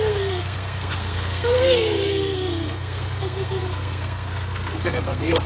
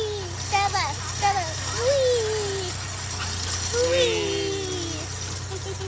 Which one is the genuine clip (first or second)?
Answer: second